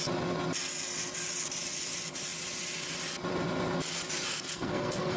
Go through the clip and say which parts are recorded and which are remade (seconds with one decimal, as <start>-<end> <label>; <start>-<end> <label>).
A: 0.0-4.3 recorded; 4.3-5.2 remade